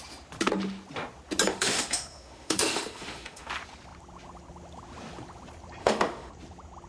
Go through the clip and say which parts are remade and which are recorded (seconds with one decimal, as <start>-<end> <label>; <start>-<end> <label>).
0.0-1.5 recorded; 1.5-3.5 remade; 3.5-5.8 recorded; 5.8-6.3 remade; 6.3-6.9 recorded